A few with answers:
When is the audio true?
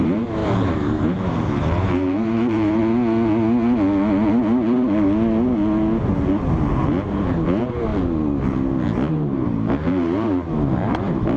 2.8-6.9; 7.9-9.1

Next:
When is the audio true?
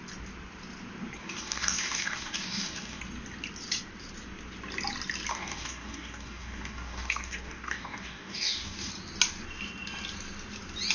0.0-1.2; 3.0-5.3; 8.9-10.9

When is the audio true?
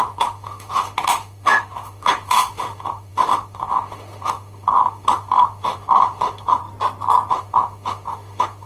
6.6-7.3